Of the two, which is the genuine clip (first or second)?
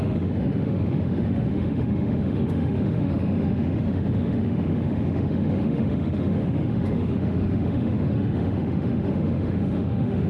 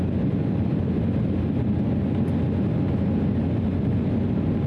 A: second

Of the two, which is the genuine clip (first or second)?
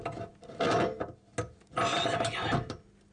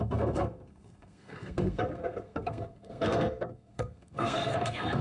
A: first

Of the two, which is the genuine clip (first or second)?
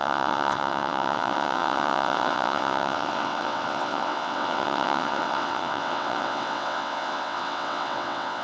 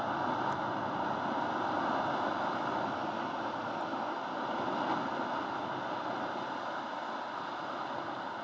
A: second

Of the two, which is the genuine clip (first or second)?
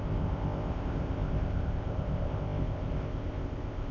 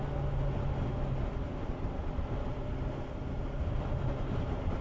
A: second